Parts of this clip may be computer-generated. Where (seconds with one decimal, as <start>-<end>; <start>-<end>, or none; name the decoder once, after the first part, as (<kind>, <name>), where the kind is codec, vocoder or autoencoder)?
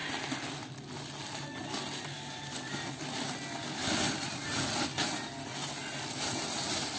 none